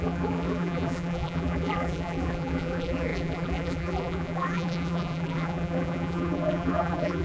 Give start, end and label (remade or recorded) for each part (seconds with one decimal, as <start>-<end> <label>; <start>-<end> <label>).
0.0-7.2 remade